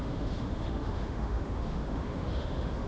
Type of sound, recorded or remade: remade